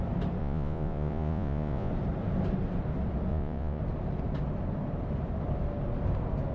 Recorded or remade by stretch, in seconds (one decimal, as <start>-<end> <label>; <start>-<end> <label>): 0.0-0.4 recorded; 0.4-1.9 remade; 1.9-3.3 recorded; 3.3-3.8 remade; 3.8-6.5 recorded